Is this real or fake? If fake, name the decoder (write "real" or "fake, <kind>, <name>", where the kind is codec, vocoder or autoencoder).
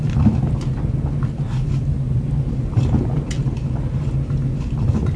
real